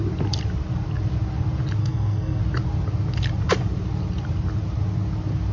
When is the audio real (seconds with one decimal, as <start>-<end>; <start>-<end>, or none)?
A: 0.0-1.8; 2.4-5.5